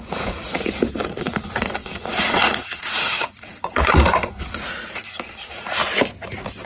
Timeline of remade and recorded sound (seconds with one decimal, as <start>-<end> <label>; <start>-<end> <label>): 0.0-5.8 remade; 5.8-6.7 recorded